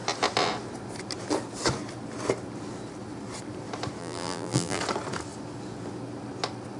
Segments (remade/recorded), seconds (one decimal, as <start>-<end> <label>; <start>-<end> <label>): 0.0-4.0 recorded; 4.0-4.8 remade; 4.8-6.8 recorded